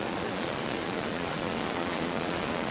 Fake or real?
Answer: fake